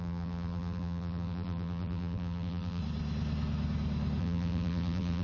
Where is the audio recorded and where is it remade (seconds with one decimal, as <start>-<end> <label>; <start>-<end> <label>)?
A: 0.0-2.8 remade; 2.8-4.2 recorded; 4.2-5.2 remade